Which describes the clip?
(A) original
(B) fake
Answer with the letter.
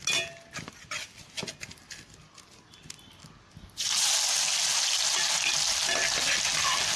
A